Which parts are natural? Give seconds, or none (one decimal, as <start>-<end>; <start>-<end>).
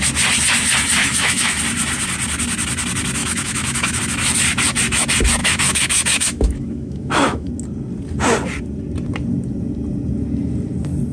0.0-1.0; 1.6-3.2; 4.0-5.4; 7.5-11.1